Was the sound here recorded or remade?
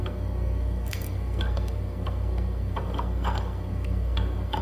remade